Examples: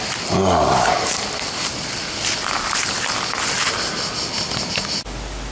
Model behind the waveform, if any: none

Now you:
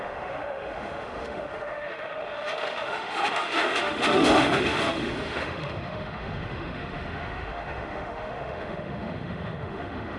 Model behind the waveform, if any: autoencoder, DAC-VAE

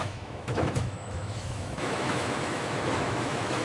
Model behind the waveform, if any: autoencoder, DAC-VAE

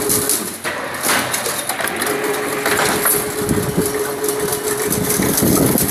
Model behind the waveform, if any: none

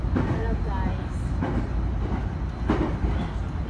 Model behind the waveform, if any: none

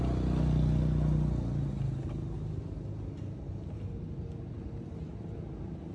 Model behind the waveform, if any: none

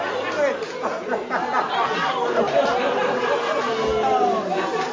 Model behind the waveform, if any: none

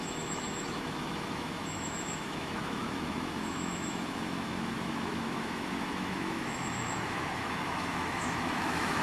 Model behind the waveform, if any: autoencoder, DAC-VAE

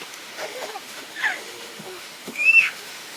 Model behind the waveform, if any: autoencoder, DAC-VAE